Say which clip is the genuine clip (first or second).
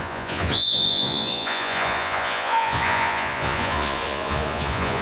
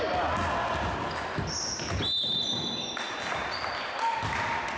second